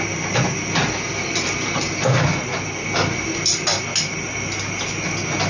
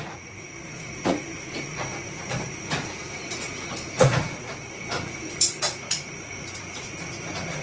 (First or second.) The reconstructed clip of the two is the second